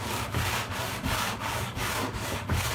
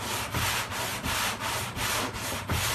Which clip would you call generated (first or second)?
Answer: first